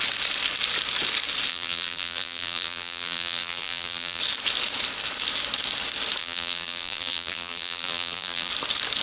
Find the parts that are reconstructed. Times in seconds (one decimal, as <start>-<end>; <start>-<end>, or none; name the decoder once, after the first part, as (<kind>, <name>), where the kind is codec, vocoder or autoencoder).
1.5-4.2 (vocoder, BigVGAN v2); 6.2-8.5